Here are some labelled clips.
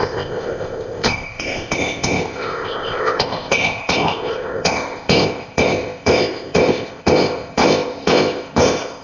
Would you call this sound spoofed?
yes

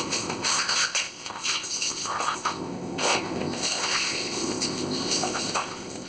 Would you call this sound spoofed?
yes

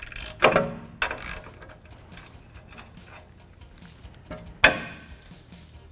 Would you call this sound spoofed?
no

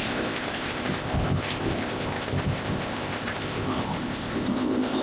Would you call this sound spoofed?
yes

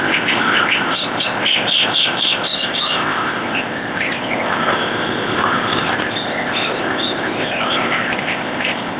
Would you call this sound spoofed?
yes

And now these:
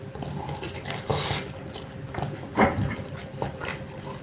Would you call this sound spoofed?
no